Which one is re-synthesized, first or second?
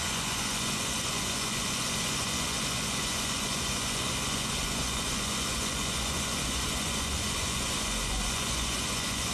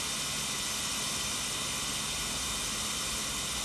first